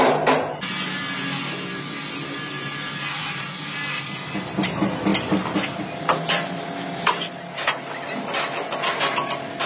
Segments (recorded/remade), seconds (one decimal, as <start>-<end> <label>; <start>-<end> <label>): 0.0-9.7 recorded